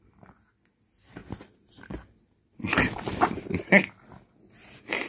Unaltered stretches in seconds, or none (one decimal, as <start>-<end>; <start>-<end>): 0.0-5.1